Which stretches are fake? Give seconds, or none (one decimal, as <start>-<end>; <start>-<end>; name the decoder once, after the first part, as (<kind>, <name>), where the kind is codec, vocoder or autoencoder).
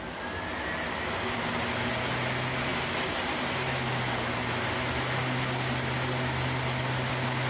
none